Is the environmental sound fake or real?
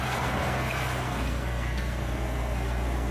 fake